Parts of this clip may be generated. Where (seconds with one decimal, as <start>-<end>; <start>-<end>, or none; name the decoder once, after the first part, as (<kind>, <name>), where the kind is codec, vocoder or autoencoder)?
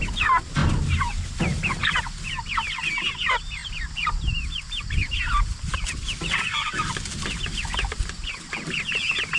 0.6-2.0 (vocoder, BigVGAN v2); 3.6-8.3